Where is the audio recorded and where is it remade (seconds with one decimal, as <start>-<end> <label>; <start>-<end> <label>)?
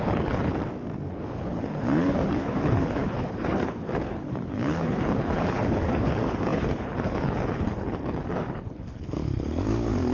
0.0-0.5 remade; 0.5-1.1 recorded; 1.1-10.1 remade